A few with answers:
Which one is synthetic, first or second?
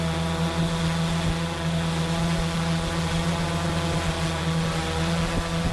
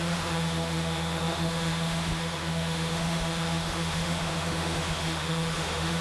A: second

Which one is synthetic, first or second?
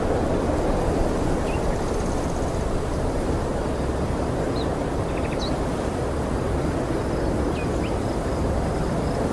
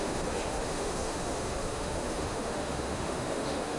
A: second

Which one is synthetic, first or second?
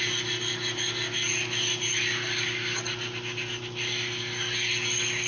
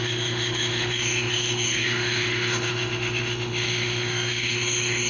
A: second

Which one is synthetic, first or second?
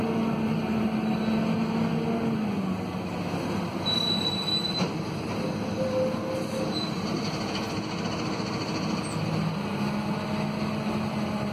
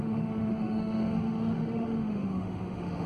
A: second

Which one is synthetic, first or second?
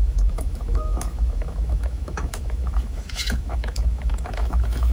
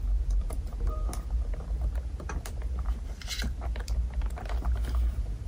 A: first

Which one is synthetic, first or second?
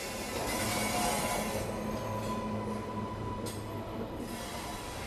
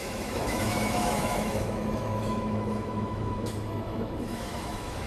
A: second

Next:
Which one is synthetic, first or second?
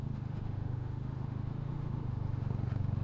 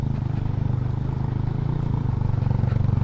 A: first